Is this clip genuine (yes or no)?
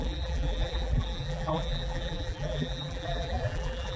no